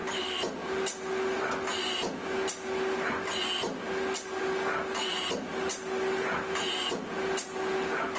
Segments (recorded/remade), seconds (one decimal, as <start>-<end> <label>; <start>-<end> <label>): 0.0-8.2 recorded